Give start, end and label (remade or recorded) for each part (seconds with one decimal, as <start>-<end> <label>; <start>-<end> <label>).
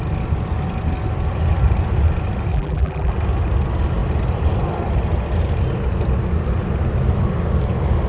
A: 0.0-2.5 recorded; 2.5-3.1 remade; 3.1-8.1 recorded